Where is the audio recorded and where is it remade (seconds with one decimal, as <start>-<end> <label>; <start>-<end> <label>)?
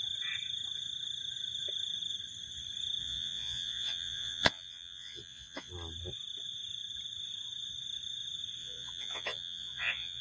0.0-3.0 recorded; 3.0-5.7 remade; 5.7-8.6 recorded; 8.6-10.2 remade